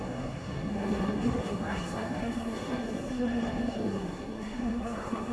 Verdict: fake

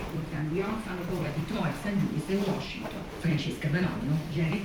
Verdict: fake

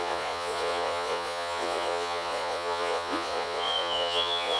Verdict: fake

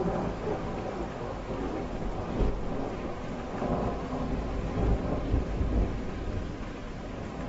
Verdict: real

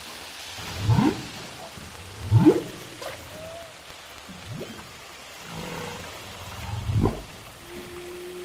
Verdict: real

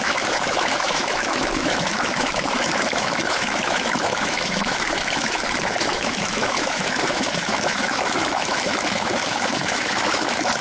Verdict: fake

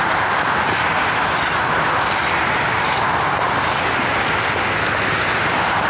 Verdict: real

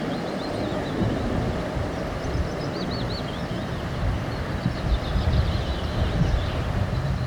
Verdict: real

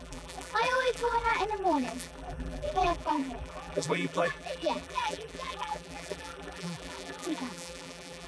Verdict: fake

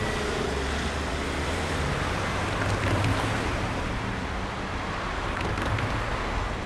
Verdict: real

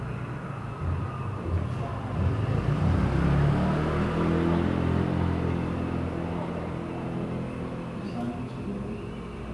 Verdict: real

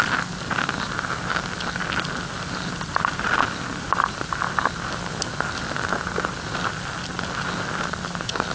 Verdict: real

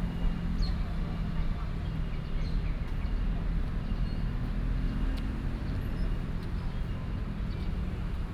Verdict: real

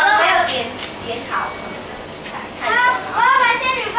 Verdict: real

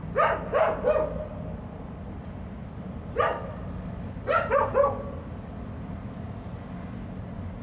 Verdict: real